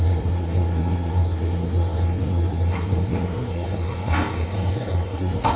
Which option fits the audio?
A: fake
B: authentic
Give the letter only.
A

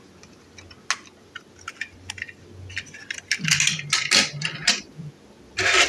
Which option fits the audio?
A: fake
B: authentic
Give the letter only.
B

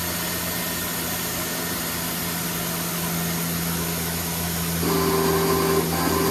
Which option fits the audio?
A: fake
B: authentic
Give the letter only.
B